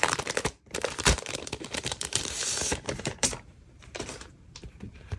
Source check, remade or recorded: remade